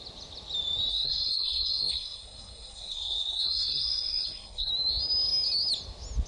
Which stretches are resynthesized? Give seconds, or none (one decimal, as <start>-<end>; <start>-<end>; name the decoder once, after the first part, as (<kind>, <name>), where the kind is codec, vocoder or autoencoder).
0.9-4.7 (codec, SNAC)